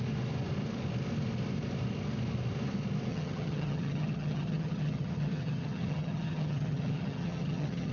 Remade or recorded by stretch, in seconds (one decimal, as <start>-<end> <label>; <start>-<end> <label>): 0.0-3.1 recorded; 3.1-7.9 remade